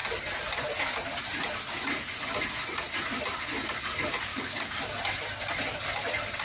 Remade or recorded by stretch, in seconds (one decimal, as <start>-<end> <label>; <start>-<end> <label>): 0.0-4.3 recorded; 4.3-4.8 remade; 4.8-6.4 recorded